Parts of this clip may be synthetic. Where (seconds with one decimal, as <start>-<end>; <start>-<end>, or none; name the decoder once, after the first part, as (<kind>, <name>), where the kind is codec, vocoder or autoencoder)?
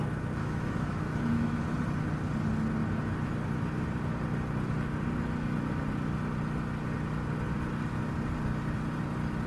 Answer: 0.4-1.6 (autoencoder, DAC-VAE)